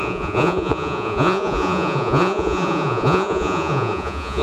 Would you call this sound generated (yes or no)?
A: yes